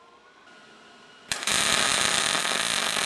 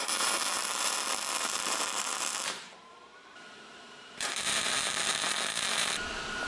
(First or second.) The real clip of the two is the first